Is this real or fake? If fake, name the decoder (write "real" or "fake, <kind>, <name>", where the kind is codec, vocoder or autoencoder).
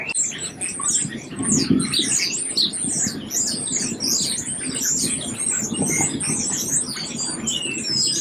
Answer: real